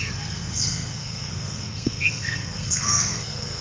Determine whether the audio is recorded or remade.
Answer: remade